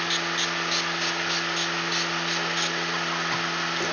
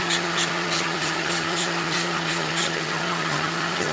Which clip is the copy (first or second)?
second